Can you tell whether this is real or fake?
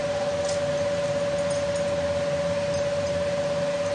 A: real